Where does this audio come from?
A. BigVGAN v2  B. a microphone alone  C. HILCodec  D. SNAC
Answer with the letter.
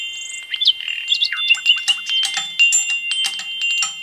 B